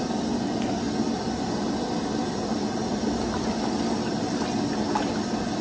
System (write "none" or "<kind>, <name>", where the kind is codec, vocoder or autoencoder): none